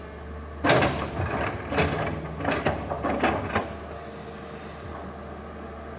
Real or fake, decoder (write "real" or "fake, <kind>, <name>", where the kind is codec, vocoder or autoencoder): real